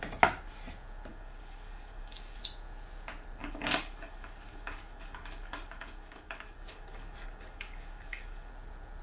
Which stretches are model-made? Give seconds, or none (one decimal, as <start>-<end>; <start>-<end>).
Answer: 1.1-2.4; 3.4-8.5